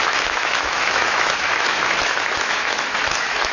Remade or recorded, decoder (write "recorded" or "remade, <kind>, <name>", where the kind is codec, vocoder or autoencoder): remade, autoencoder, DAC-VAE